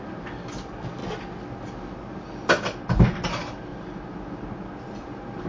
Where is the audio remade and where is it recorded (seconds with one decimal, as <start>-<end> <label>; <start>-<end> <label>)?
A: 0.0-5.5 recorded